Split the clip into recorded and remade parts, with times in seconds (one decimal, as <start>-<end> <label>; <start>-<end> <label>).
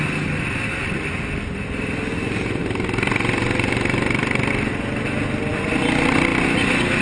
0.0-2.6 recorded; 2.6-4.5 remade; 4.5-6.3 recorded; 6.3-7.0 remade